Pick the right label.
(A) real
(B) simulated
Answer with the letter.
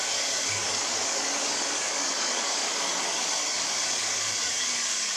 B